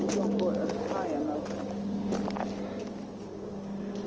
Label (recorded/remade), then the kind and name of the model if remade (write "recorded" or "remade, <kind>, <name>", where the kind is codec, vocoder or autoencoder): recorded